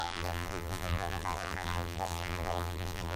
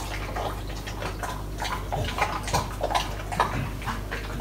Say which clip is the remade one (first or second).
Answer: first